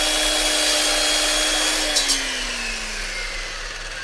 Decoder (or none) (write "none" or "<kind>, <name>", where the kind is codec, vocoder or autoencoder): none